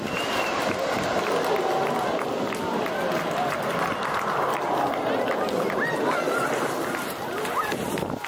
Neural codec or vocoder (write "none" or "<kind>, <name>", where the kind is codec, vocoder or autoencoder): none